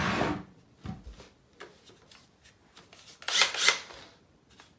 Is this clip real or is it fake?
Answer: real